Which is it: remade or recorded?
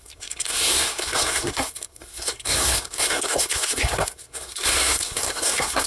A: remade